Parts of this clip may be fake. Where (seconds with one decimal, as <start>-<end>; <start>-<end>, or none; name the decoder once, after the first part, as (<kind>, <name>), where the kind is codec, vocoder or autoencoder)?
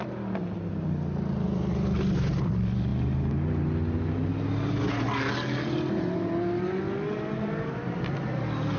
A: none